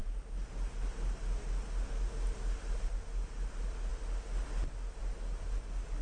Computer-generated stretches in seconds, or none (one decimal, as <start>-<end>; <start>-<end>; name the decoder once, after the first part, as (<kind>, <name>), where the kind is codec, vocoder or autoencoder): none